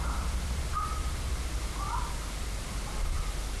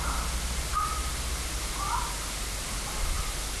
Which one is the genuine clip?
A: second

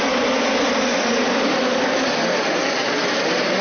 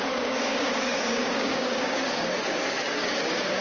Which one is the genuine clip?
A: first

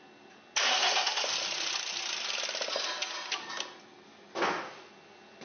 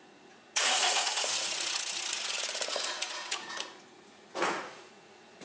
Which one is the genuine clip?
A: first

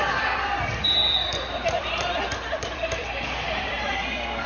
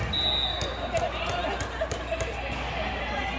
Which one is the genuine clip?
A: second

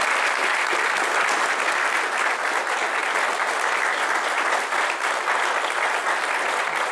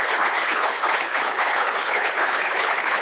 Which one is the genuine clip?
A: first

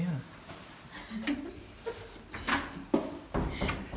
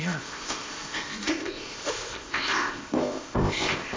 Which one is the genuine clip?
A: first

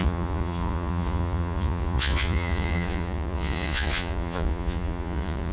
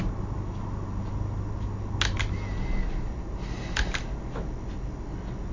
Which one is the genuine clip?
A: second